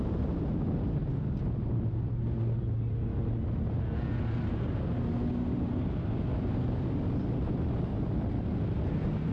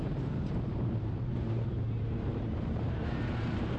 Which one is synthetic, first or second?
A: second